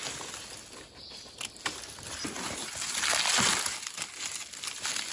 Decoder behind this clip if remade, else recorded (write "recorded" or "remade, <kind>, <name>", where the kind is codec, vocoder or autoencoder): recorded